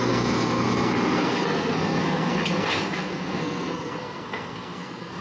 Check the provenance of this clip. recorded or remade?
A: remade